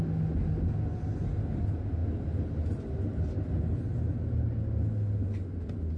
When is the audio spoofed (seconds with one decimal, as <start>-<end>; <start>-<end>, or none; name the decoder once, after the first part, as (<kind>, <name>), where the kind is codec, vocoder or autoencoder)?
none

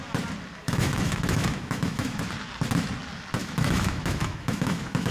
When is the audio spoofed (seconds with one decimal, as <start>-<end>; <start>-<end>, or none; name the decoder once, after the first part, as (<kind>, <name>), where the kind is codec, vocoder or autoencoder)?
0.6-2.2 (autoencoder, DAC-VAE); 3.4-5.1

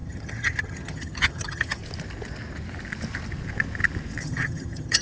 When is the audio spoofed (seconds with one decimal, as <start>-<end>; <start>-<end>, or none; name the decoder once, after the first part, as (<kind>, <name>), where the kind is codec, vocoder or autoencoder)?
0.0-1.8 (vocoder, HiFi-GAN); 4.2-5.0

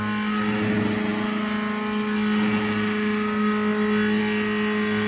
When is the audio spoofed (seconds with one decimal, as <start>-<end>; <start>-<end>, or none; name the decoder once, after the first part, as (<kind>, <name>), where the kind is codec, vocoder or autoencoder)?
none

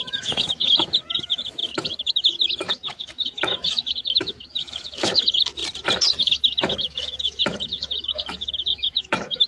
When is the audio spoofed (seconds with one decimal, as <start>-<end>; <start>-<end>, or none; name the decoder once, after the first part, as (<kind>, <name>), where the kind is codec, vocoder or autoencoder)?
0.0-5.6 (autoencoder, DAC-VAE); 6.2-9.5

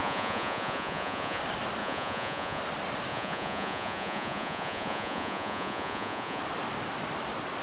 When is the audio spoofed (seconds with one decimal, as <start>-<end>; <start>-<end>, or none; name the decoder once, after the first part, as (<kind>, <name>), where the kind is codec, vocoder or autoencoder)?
0.0-1.4 (vocoder, Vocos); 1.8-2.6; 3.1-6.4